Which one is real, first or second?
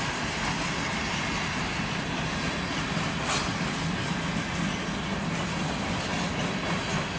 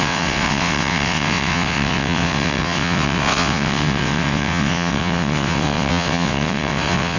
first